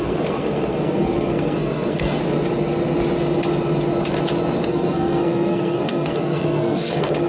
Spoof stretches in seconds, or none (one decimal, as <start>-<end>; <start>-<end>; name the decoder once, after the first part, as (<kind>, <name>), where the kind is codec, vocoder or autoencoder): 0.0-2.2 (codec, SNAC); 4.7-7.3